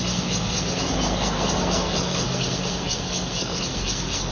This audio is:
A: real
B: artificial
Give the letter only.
B